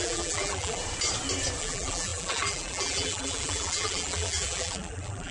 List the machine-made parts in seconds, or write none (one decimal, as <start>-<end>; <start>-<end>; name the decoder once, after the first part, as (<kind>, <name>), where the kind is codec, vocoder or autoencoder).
0.0-0.8 (vocoder, BigVGAN v2); 1.6-5.3